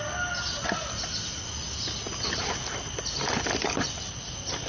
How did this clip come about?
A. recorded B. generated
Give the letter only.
A